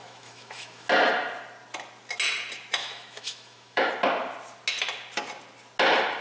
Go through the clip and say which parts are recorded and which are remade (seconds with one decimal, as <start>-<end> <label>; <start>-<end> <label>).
0.0-0.9 remade; 0.9-2.8 recorded; 2.8-3.9 remade; 3.9-6.2 recorded